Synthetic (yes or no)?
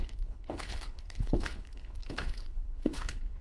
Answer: yes